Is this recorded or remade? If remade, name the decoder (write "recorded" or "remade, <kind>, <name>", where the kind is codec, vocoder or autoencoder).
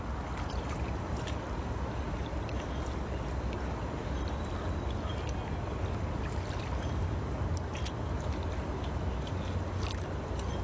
recorded